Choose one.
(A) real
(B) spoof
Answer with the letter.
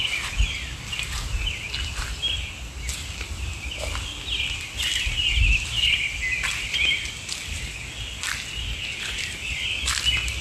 A